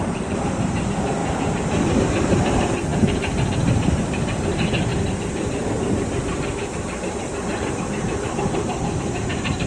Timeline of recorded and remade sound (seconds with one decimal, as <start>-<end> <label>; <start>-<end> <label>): 0.0-1.2 remade; 1.2-2.0 recorded; 2.0-4.9 remade; 4.9-7.6 recorded; 7.6-9.7 remade